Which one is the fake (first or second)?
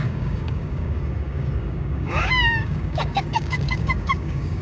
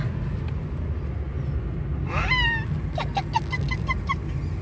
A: first